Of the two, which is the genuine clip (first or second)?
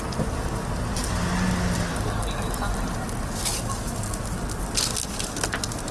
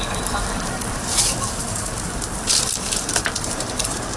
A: first